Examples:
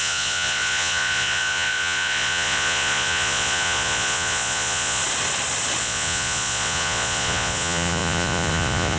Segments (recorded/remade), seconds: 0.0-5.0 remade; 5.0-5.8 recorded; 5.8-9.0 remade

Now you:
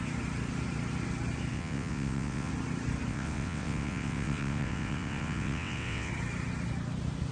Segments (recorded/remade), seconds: 0.0-1.5 recorded; 1.5-2.5 remade; 2.5-3.1 recorded; 3.1-6.1 remade; 6.1-7.3 recorded

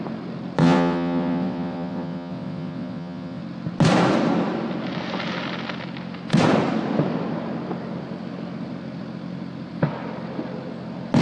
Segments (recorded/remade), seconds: 0.0-0.6 recorded; 0.6-3.4 remade; 3.4-11.2 recorded

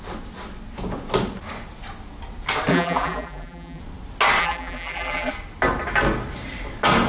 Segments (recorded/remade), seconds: 0.0-2.7 recorded; 2.7-3.8 remade; 3.8-4.4 recorded; 4.4-5.3 remade; 5.3-7.1 recorded

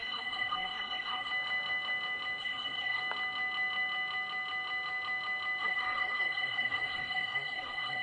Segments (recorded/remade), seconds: 0.0-1.3 remade; 1.3-2.4 recorded; 2.4-3.0 remade; 3.0-5.6 recorded; 5.6-8.0 remade

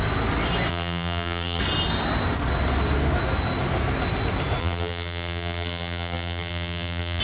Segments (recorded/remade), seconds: 0.0-0.7 recorded; 0.7-1.6 remade; 1.6-4.6 recorded; 4.6-7.2 remade